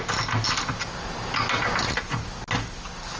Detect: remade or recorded recorded